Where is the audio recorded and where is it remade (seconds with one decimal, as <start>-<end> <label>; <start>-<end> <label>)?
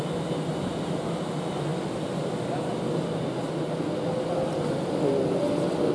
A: 0.0-5.9 recorded